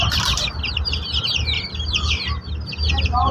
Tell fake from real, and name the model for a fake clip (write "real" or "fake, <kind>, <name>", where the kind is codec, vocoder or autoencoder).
real